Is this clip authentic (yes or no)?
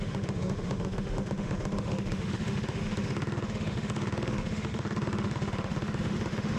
no